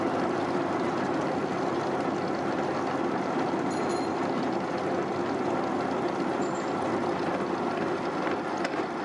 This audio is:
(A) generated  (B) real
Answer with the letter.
B